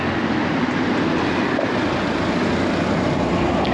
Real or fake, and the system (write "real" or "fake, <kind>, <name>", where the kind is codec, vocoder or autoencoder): real